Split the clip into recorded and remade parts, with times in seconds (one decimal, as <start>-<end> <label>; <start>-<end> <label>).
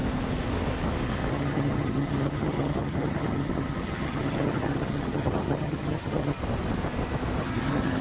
0.0-1.3 recorded; 1.3-6.4 remade; 6.4-7.4 recorded; 7.4-8.0 remade